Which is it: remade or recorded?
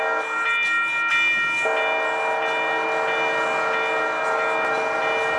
recorded